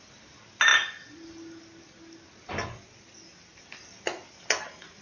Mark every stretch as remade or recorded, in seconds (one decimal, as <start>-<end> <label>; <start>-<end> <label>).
0.0-5.0 recorded